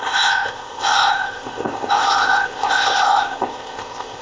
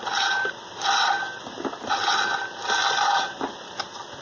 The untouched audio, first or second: second